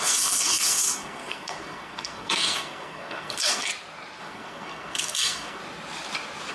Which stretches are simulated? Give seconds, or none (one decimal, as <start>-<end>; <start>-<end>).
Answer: 0.0-3.7; 4.2-5.6